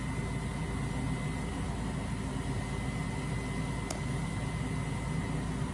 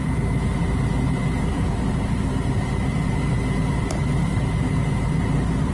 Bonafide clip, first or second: first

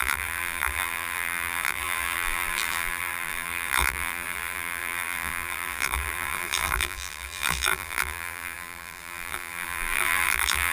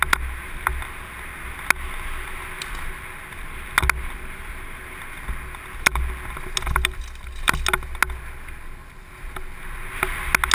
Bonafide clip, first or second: second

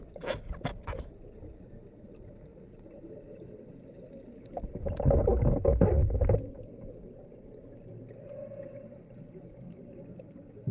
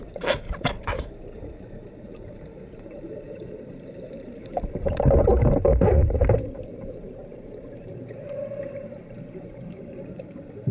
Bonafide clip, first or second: first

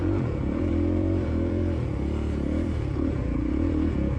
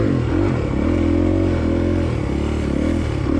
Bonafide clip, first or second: second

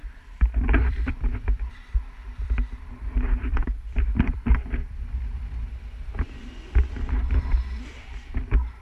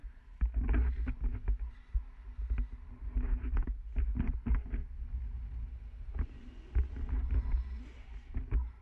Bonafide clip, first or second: second